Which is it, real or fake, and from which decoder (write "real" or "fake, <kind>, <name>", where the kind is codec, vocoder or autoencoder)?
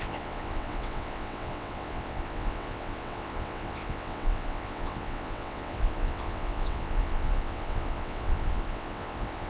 fake, vocoder, WaveNeXt